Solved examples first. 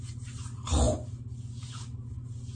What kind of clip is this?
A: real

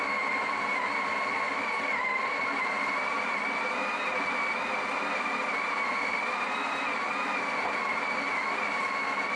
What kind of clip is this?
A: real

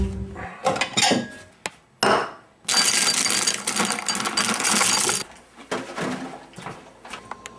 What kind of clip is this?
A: real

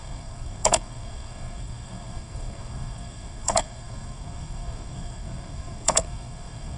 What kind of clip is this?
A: fake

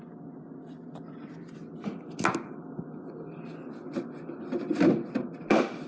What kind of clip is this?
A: real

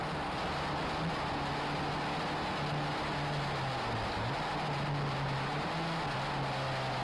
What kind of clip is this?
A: real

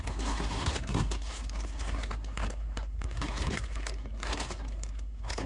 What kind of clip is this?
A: fake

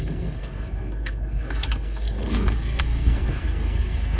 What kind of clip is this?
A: fake